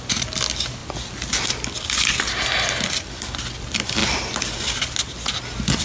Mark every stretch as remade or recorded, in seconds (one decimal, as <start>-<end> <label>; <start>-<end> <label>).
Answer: 0.0-5.8 recorded

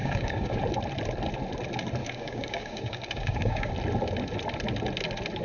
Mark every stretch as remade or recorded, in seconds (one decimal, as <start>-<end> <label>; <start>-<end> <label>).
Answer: 0.0-0.6 remade; 0.6-2.0 recorded; 2.0-3.7 remade; 3.7-5.4 recorded

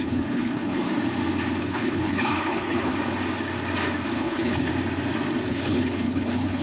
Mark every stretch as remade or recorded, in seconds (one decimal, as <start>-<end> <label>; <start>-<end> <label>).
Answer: 0.0-0.8 remade; 0.8-1.6 recorded; 1.6-2.9 remade; 2.9-4.1 recorded; 4.1-4.7 remade; 4.7-5.5 recorded; 5.5-6.6 remade

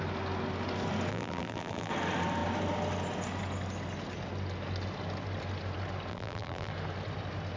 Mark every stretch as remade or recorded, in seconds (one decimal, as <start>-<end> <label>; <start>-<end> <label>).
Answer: 0.0-1.1 recorded; 1.1-1.9 remade; 1.9-6.1 recorded; 6.1-6.7 remade; 6.7-7.6 recorded

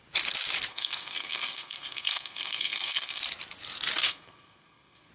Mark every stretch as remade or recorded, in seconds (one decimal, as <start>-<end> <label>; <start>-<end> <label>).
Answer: 0.0-0.7 recorded; 0.7-3.2 remade; 3.2-4.0 recorded; 4.0-5.1 remade

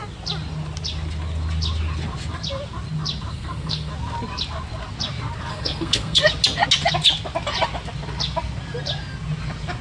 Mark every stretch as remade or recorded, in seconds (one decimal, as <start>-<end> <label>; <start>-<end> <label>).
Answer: 0.0-3.3 recorded; 3.3-3.9 remade; 3.9-5.5 recorded; 5.5-6.2 remade; 6.2-9.8 recorded

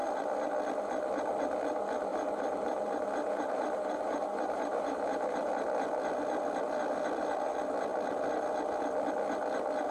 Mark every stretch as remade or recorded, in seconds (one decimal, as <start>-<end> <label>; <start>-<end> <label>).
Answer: 0.0-2.1 recorded; 2.1-5.5 remade; 5.5-9.9 recorded